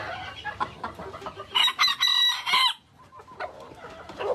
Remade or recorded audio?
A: recorded